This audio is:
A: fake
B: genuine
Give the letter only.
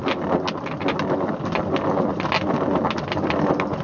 B